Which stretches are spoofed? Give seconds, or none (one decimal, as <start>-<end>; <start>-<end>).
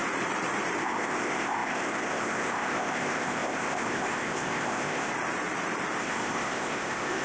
0.8-5.1; 6.0-7.2